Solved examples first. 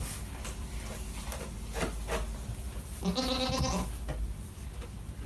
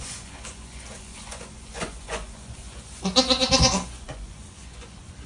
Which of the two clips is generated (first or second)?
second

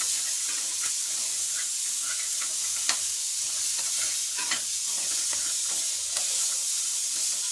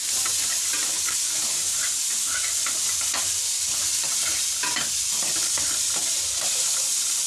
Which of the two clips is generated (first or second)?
first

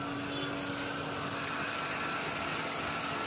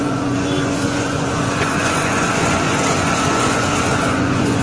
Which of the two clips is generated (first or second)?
second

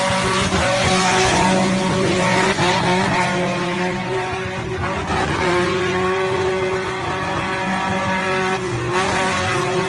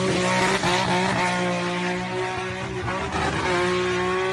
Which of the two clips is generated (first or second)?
first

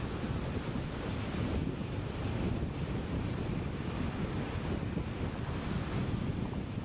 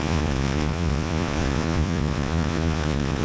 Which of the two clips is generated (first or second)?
second